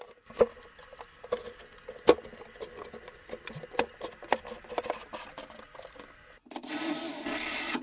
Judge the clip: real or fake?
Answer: real